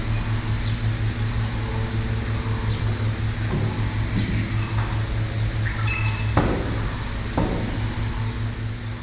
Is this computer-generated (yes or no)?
no